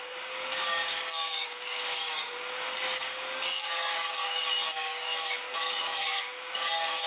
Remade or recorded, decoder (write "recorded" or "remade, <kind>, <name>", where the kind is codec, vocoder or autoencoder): remade, codec, DAC